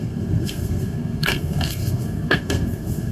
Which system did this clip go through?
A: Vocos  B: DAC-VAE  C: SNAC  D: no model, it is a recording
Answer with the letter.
C